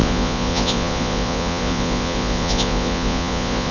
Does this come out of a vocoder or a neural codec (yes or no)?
yes